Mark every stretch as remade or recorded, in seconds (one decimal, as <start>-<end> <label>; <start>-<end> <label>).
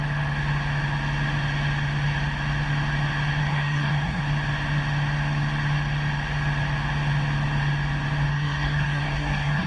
0.0-3.4 recorded; 3.4-4.2 remade; 4.2-8.3 recorded; 8.3-9.7 remade